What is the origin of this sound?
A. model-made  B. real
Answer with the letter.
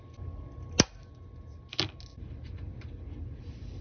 B